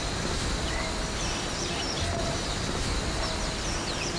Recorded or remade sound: recorded